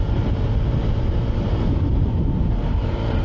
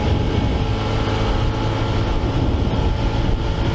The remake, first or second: first